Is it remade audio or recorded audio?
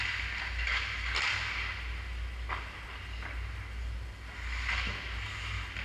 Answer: recorded